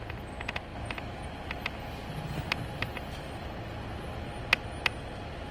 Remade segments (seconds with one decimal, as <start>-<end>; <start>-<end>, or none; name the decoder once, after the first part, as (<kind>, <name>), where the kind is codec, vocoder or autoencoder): none